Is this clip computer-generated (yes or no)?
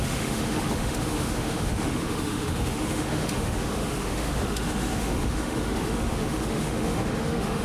yes